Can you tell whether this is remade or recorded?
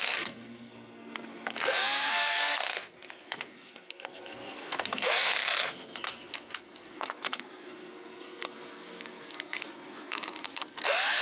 remade